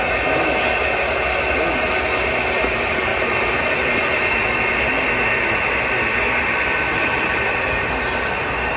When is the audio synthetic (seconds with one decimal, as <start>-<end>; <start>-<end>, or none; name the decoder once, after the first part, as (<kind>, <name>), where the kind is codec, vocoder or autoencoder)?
3.1-4.2 (vocoder, BigVGAN v2); 6.9-8.0

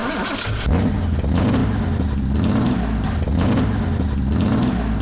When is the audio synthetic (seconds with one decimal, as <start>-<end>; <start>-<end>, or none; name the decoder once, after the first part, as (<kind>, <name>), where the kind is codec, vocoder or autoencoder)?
none

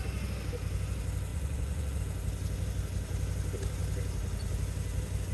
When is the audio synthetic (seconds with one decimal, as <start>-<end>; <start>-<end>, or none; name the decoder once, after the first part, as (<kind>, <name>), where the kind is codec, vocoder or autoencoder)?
1.3-2.0 (vocoder, Vocos)

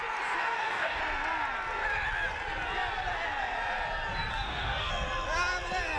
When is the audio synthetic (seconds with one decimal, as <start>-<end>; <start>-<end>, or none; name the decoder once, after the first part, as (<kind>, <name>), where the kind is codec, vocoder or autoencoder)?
0.4-1.0 (codec, DAC); 4.3-4.9